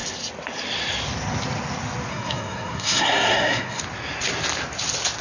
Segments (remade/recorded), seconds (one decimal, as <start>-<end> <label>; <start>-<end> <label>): 0.0-2.1 recorded; 2.1-3.8 remade; 3.8-5.2 recorded